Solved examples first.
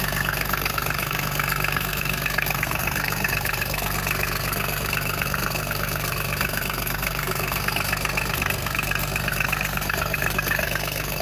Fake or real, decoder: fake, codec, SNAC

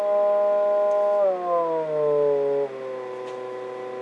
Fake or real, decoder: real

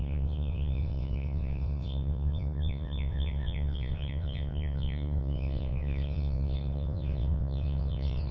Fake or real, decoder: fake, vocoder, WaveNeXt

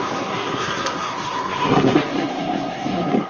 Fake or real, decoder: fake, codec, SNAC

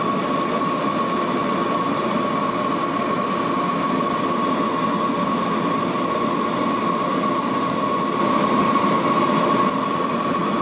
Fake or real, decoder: real